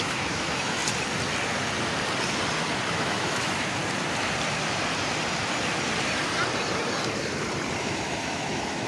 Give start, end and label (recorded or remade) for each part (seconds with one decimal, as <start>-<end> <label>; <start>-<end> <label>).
0.0-0.8 remade; 0.8-2.9 recorded; 2.9-3.8 remade; 3.8-7.8 recorded; 7.8-8.9 remade